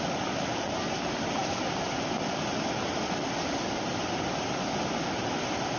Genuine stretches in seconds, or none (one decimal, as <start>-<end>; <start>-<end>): 0.0-5.8